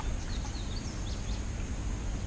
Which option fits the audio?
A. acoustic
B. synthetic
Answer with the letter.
A